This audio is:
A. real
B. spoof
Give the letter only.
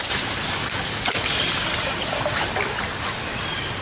A